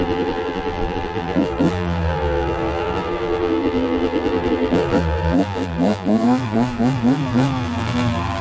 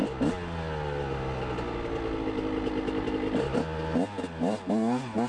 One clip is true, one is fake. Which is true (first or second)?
second